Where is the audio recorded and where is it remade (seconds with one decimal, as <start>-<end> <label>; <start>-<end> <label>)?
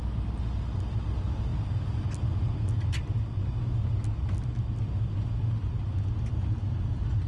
0.0-7.3 recorded